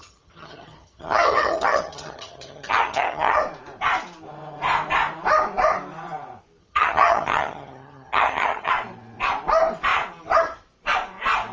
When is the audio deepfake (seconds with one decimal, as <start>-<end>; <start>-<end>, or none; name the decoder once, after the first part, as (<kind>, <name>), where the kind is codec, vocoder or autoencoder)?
0.0-3.4 (vocoder, HiFi-GAN); 6.6-8.7